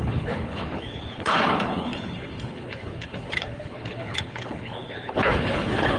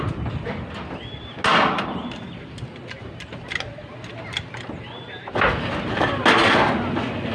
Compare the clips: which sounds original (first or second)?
second